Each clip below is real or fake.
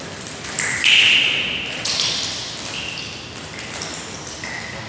real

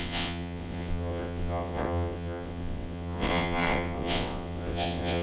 fake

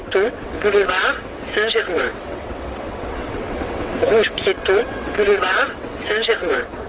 fake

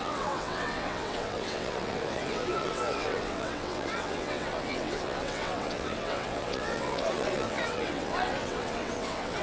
fake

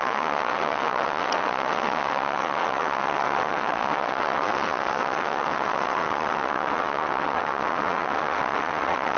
fake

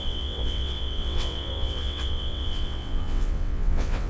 fake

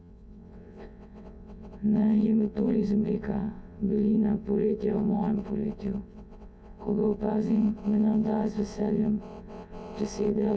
fake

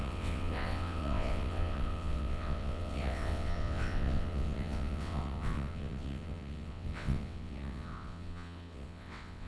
fake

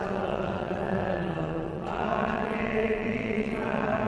fake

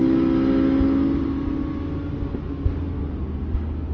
real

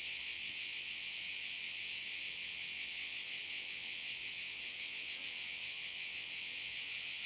fake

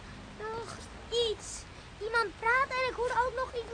real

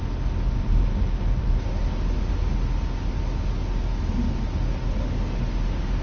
real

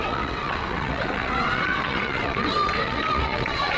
fake